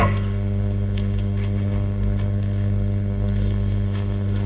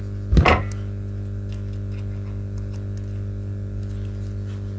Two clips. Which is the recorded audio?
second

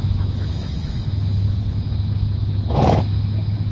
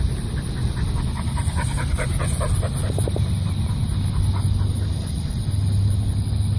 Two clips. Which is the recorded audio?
second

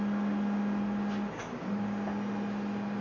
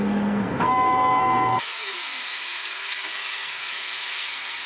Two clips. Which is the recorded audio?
first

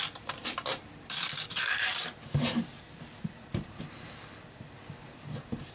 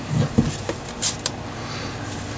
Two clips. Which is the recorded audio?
second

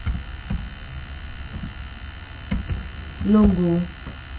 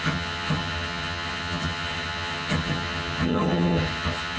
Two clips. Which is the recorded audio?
first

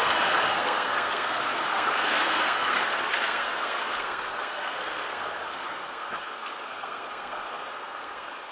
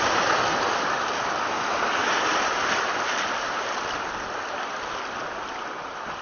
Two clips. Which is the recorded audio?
second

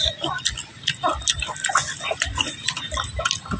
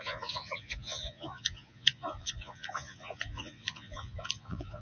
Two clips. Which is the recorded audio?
first